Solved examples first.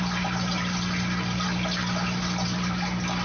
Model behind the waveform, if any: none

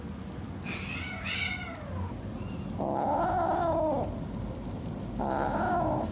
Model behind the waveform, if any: none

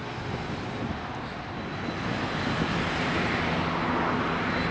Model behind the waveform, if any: none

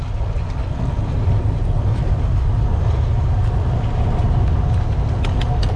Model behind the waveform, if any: none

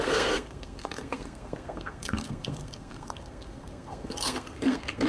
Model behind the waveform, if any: codec, SNAC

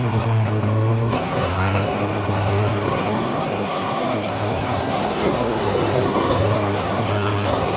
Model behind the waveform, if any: codec, SNAC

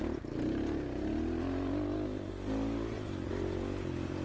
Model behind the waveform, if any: none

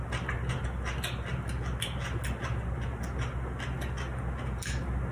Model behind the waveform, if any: none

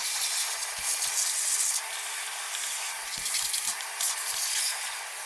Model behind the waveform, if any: none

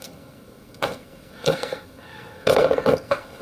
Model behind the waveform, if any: codec, SNAC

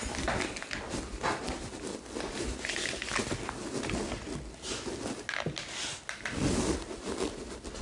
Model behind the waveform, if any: none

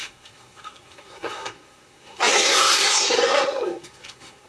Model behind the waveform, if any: codec, SNAC